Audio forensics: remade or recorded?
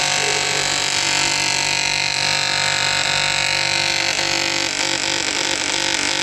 recorded